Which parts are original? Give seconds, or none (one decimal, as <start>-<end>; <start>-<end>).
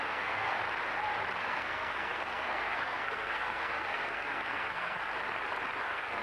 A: 0.6-1.4; 5.1-5.8